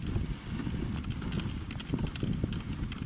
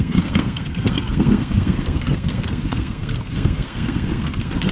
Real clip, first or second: first